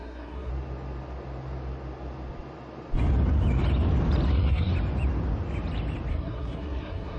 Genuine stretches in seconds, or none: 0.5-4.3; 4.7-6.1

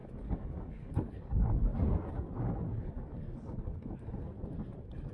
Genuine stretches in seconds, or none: 1.7-2.8; 4.3-5.1

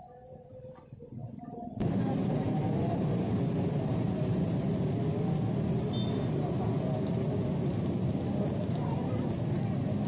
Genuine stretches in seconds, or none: 0.0-1.2; 4.7-10.1